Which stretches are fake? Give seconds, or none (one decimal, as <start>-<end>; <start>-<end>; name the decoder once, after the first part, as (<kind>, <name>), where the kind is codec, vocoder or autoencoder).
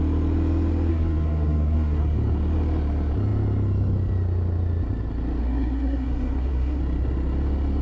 0.9-2.0 (codec, SNAC); 5.4-6.8